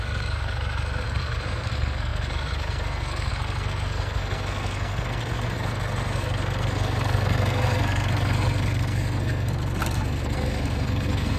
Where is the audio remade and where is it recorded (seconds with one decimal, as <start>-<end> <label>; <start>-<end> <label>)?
0.0-11.4 remade